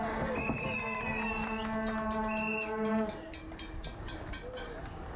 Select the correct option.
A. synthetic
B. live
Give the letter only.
B